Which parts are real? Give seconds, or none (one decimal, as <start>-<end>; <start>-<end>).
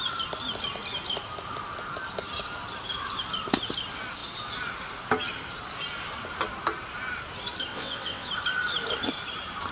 0.0-7.7; 8.3-9.7